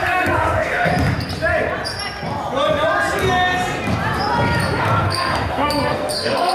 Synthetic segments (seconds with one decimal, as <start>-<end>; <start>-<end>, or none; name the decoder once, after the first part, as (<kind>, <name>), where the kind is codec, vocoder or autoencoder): 0.0-0.9 (codec, SNAC); 4.8-6.5

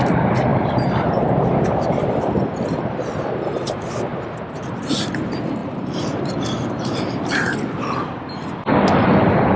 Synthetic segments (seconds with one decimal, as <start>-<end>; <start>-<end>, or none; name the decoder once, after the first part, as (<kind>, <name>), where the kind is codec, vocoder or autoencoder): 0.5-1.2 (vocoder, BigVGAN v2); 5.6-7.1

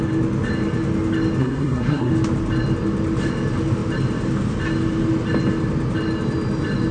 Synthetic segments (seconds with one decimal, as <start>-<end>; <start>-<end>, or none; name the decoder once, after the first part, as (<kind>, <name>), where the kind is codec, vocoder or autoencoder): 1.4-2.1 (codec, SNAC)

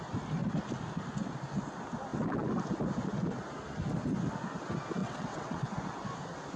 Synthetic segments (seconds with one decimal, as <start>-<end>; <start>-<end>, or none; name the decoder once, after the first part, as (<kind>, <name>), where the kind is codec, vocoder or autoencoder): 5.0-5.7 (vocoder, WaveNeXt)

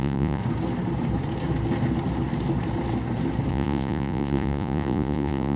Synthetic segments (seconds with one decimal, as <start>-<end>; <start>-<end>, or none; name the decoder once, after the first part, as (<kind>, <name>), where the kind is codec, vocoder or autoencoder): 0.0-0.4 (vocoder, Vocos); 3.5-5.6

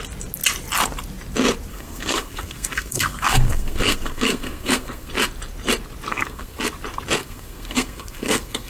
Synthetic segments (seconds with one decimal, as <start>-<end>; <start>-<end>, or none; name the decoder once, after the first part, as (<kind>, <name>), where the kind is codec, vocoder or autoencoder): 1.7-5.1 (codec, SNAC); 6.1-6.6; 7.2-8.7